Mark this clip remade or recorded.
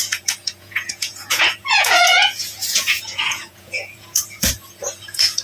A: remade